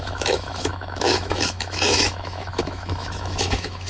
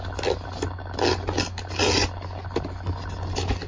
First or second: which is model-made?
first